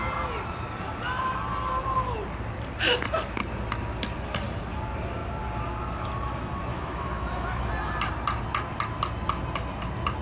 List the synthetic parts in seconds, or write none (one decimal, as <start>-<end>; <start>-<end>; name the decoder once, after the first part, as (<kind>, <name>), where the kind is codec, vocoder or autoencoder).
6.7-7.7 (autoencoder, DAC-VAE)